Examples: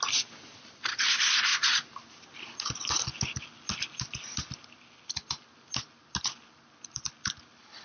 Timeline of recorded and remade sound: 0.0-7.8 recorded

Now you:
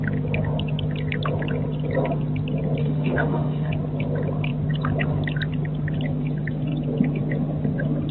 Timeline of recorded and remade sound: 0.0-2.8 recorded; 2.8-3.7 remade; 3.7-8.1 recorded

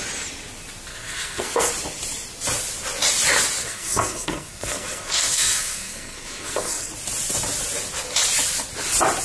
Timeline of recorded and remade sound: 0.0-0.9 recorded; 0.9-1.7 remade; 1.7-3.6 recorded; 3.6-6.9 remade; 6.9-9.2 recorded

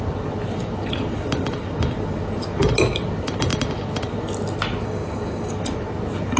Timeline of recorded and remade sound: 0.0-4.8 recorded; 4.8-5.5 remade; 5.5-6.4 recorded

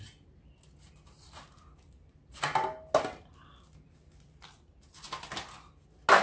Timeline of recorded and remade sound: 0.0-6.2 recorded

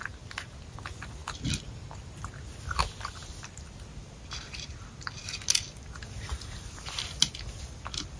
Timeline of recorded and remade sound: 0.0-8.2 recorded

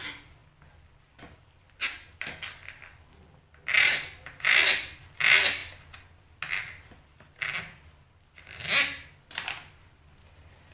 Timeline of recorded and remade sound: 0.0-10.7 recorded